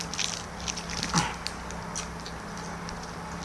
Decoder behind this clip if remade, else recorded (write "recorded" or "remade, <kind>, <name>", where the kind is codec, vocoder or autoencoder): recorded